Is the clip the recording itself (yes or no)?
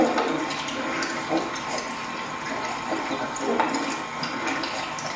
no